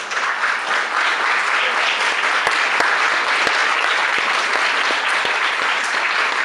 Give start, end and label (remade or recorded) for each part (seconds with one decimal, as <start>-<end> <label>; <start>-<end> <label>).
0.0-6.4 recorded